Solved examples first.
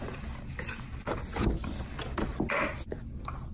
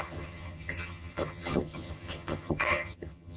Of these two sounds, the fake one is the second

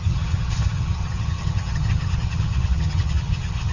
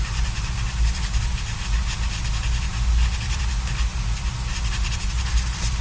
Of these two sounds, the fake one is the first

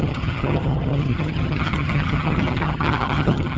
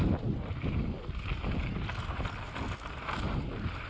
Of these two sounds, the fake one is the first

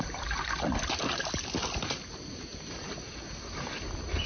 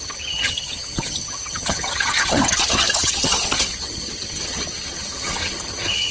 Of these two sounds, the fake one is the second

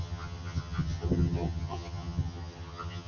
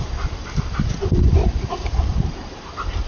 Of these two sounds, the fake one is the first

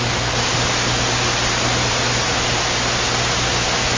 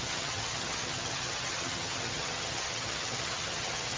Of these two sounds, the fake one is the second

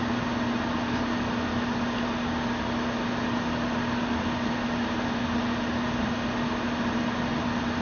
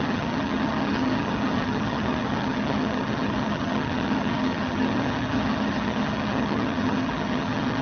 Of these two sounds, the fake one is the second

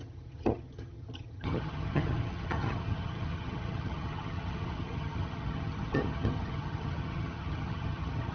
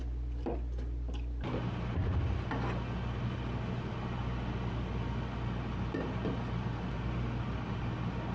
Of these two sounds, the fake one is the first